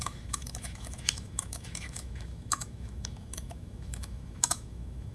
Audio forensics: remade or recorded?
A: remade